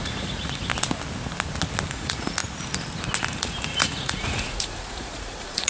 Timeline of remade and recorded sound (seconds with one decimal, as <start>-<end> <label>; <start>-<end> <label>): 0.0-0.7 remade; 0.7-1.9 recorded; 1.9-2.4 remade; 2.4-3.2 recorded; 3.2-5.7 remade